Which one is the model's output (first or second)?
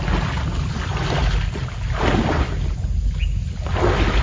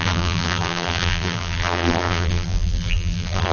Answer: second